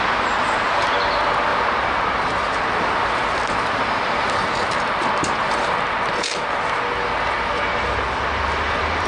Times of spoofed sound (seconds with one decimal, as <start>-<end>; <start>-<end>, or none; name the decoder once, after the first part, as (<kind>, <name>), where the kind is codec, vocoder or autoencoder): 1.5-5.8 (vocoder, BigVGAN v2)